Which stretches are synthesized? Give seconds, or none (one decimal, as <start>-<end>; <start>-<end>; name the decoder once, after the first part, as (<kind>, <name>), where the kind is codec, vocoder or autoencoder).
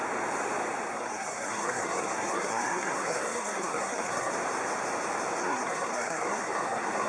0.9-4.3 (codec, SNAC); 5.4-7.1